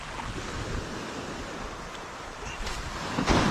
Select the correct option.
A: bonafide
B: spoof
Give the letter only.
A